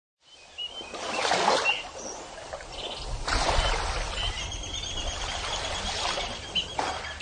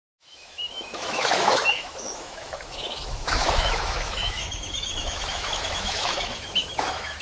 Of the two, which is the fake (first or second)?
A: second